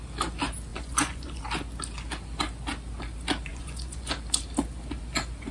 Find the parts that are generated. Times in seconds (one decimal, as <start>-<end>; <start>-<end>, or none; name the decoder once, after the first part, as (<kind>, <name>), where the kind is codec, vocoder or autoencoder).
0.7-1.4 (vocoder, Vocos); 3.5-4.1